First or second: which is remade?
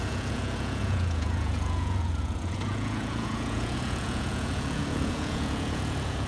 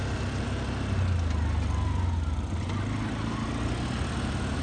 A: first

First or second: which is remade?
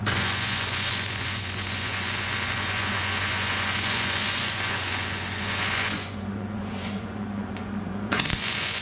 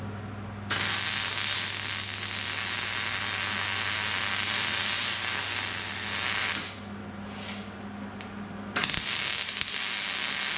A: first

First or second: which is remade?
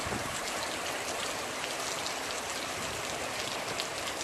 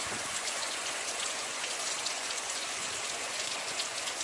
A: second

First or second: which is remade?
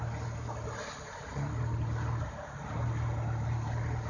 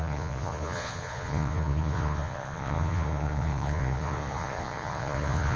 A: second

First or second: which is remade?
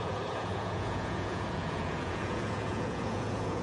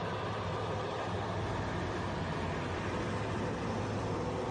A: first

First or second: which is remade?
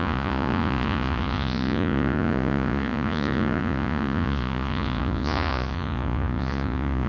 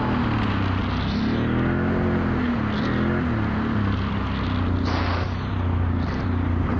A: first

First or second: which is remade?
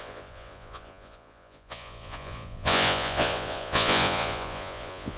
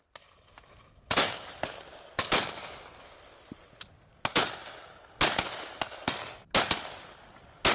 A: first